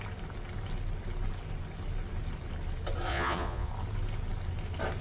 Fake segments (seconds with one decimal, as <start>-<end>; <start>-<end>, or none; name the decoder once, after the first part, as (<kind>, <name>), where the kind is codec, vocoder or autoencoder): 3.1-3.7 (vocoder, Vocos)

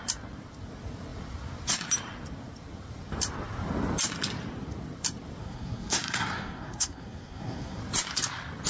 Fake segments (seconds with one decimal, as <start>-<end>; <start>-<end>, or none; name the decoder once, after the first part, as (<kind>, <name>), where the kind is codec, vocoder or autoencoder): 5.4-7.8 (codec, SNAC)

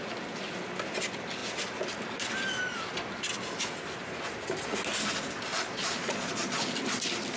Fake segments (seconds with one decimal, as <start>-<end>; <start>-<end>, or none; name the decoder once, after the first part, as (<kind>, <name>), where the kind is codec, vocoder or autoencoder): 5.5-6.6 (vocoder, Vocos)

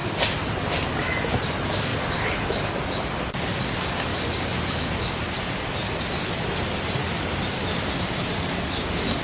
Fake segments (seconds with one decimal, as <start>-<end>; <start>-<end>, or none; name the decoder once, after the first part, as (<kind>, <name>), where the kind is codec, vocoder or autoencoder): none

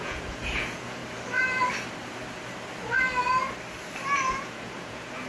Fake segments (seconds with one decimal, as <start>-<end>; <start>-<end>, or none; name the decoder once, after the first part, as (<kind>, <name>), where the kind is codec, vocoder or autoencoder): 0.0-1.0 (vocoder, Vocos); 4.2-5.3

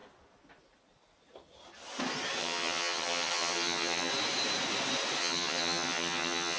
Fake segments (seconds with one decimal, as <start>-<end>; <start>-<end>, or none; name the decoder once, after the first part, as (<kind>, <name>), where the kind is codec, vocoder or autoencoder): 2.4-4.1 (vocoder, HiFi-GAN); 5.2-6.6

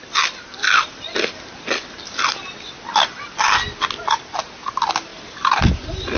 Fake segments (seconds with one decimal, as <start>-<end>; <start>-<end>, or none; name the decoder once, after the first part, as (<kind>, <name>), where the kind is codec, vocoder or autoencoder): 5.1-5.7 (vocoder, BigVGAN v2)

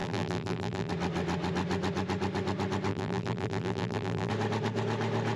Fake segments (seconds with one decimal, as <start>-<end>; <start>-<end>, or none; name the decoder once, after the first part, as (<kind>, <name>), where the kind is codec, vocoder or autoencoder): 0.0-0.9 (vocoder, BigVGAN v2); 2.9-4.3